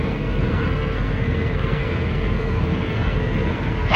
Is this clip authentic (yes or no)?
no